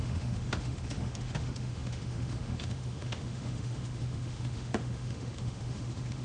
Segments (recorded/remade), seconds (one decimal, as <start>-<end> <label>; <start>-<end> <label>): 0.0-6.2 remade